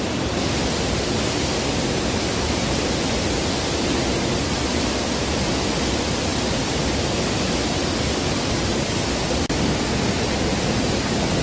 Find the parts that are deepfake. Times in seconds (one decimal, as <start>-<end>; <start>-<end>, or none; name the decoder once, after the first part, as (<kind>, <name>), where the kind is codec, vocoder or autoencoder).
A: none